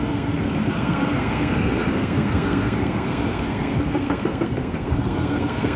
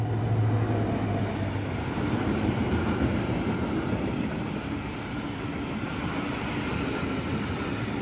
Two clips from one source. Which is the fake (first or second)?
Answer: first